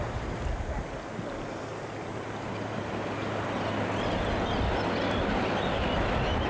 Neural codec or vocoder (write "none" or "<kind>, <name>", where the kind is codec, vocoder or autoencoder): none